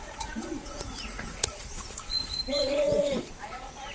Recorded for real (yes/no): no